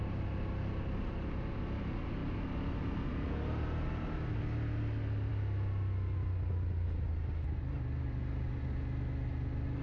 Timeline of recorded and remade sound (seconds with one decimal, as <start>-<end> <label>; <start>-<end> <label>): 0.0-9.8 recorded